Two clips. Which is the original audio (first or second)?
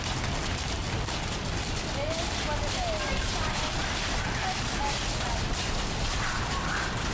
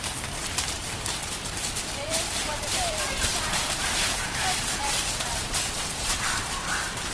first